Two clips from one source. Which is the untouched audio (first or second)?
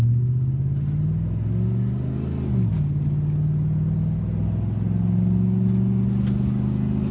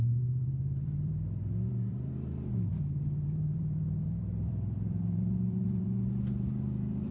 first